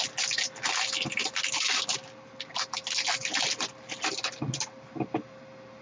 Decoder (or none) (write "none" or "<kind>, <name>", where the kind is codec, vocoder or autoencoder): none